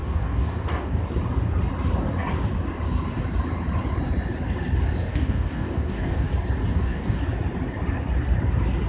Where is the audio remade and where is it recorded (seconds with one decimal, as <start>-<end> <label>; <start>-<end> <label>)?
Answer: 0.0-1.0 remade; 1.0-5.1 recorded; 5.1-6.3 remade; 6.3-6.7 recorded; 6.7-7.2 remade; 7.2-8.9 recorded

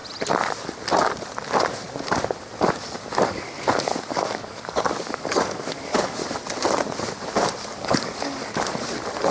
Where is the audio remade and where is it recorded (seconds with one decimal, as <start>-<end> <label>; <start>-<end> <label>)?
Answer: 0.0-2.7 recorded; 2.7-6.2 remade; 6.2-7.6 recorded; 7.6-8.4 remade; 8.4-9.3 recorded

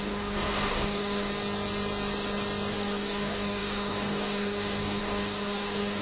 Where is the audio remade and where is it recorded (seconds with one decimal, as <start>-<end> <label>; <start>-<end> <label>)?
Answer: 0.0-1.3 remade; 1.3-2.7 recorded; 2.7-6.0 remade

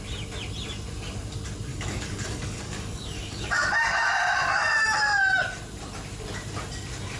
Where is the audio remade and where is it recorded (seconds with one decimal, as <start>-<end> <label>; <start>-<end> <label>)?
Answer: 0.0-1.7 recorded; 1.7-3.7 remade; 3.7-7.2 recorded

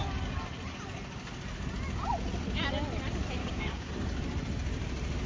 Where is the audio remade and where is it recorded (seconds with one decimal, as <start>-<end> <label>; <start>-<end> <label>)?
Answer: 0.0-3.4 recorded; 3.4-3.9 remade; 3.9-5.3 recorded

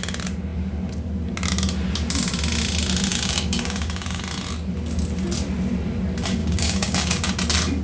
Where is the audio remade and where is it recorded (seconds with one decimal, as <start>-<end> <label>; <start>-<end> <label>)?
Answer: 0.0-3.1 recorded; 3.1-4.2 remade; 4.2-6.4 recorded; 6.4-7.3 remade; 7.3-7.8 recorded